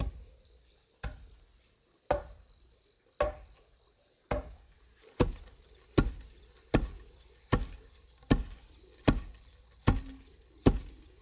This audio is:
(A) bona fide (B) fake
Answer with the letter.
A